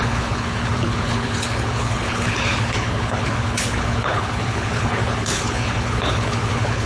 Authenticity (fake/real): fake